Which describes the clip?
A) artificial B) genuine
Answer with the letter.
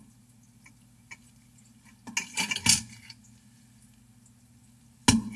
B